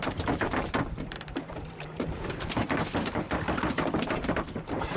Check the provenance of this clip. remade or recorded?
remade